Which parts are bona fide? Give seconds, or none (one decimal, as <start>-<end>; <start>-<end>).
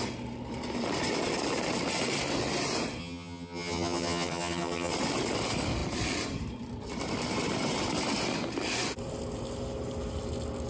0.0-3.0; 4.9-10.7